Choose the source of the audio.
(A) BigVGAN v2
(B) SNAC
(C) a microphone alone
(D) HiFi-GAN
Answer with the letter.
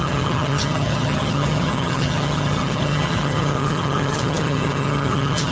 D